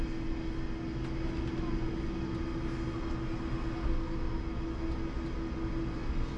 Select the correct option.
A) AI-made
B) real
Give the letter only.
B